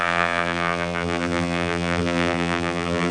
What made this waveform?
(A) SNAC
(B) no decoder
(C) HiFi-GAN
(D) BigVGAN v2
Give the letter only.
D